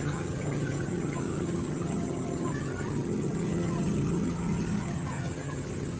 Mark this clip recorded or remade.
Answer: remade